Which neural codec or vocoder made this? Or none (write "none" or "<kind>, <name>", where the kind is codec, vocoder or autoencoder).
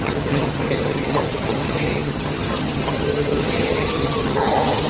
vocoder, HiFi-GAN